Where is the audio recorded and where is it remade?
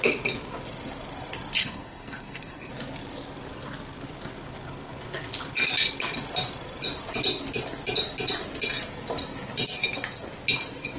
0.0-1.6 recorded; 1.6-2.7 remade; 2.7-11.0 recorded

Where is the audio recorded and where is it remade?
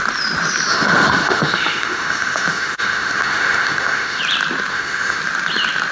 0.0-0.7 recorded; 0.7-4.2 remade; 4.2-4.7 recorded; 4.7-5.2 remade; 5.2-5.9 recorded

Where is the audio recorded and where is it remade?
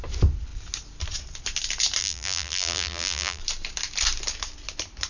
0.0-2.0 recorded; 2.0-3.4 remade; 3.4-5.1 recorded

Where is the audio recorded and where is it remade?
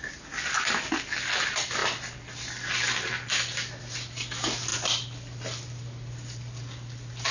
0.0-7.3 recorded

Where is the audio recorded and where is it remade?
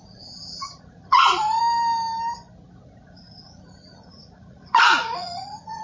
0.0-1.6 remade; 1.6-3.2 recorded; 3.2-5.8 remade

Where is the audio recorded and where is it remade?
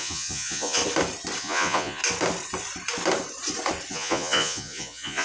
0.0-0.8 remade; 0.8-1.4 recorded; 1.4-2.0 remade; 2.0-3.9 recorded; 3.9-5.2 remade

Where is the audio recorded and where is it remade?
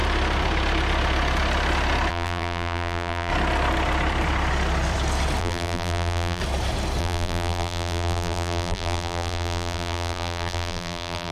0.0-2.1 recorded; 2.1-3.3 remade; 3.3-5.4 recorded; 5.4-6.4 remade; 6.4-7.0 recorded; 7.0-11.3 remade